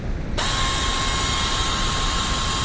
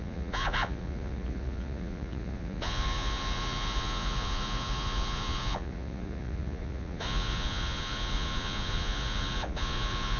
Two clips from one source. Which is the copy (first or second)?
second